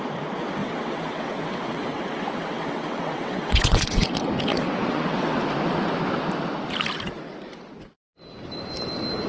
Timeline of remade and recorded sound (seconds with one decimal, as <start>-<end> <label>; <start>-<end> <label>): 0.0-0.6 recorded; 0.6-4.1 remade; 4.1-4.5 recorded; 4.5-5.4 remade; 5.4-9.3 recorded